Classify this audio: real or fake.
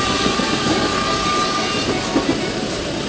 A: real